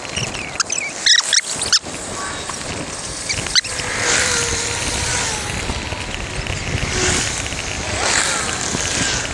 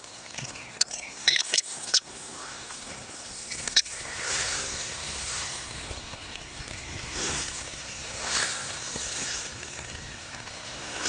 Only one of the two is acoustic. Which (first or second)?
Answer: first